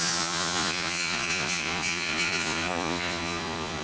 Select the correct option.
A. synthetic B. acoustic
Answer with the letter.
A